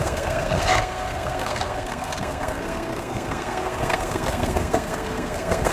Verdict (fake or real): fake